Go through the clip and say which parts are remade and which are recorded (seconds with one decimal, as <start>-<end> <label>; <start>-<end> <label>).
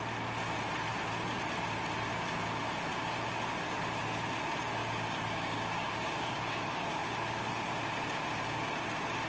0.0-4.8 recorded; 4.8-7.1 remade; 7.1-9.3 recorded